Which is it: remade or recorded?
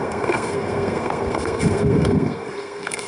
remade